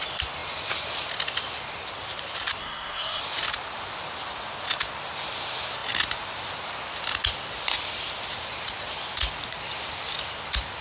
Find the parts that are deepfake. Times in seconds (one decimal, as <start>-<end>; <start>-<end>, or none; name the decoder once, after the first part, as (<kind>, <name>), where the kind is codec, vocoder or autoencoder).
2.6-3.2 (codec, SNAC)